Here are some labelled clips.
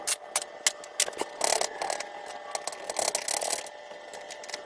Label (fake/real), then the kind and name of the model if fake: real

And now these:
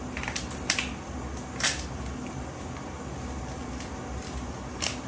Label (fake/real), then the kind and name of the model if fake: real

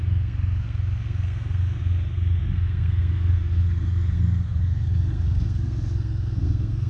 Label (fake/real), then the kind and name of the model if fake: fake, codec, SNAC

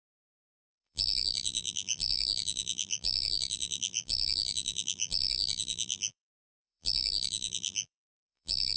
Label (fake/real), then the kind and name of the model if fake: fake, vocoder, BigVGAN v2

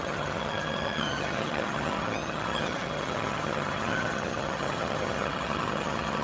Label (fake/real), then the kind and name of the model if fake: fake, vocoder, HiFi-GAN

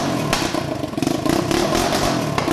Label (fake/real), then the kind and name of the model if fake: real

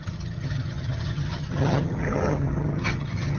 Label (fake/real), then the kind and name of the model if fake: fake, vocoder, HiFi-GAN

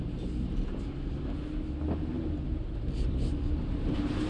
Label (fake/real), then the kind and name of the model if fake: real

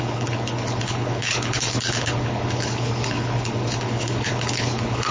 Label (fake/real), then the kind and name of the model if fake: fake, codec, HILCodec